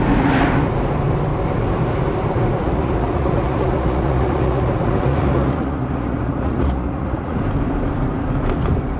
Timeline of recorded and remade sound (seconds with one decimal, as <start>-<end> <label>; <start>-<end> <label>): 0.0-2.6 recorded; 2.6-7.4 remade; 7.4-9.0 recorded